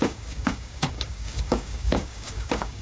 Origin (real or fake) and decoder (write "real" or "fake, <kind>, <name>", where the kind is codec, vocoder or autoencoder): fake, codec, DAC